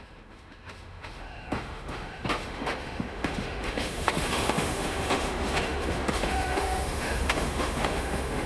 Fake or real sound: fake